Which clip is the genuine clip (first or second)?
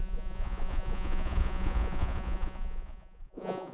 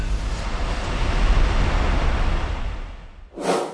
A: second